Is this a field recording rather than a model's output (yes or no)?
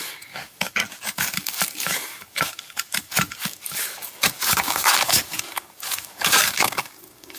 no